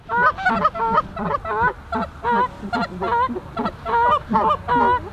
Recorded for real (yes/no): yes